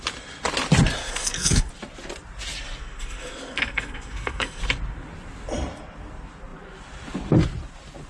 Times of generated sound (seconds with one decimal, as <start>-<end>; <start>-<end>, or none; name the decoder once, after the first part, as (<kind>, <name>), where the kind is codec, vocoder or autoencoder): 1.0-1.7 (codec, SNAC); 2.8-4.6